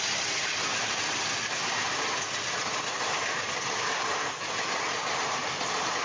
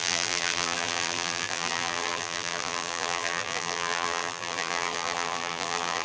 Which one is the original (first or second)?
first